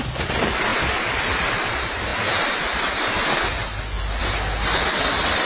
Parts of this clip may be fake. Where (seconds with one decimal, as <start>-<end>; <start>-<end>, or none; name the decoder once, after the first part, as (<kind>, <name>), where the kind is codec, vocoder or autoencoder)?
none